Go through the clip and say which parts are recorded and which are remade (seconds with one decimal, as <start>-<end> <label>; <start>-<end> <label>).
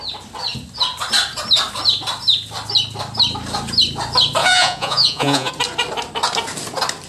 0.0-4.4 recorded; 4.4-5.5 remade; 5.5-7.1 recorded